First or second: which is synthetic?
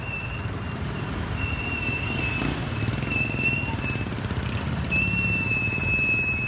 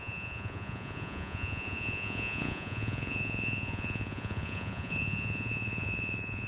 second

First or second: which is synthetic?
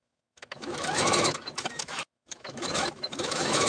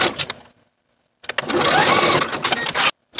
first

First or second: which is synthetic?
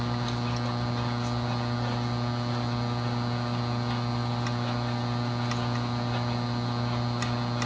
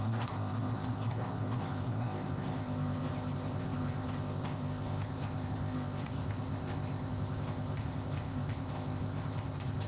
second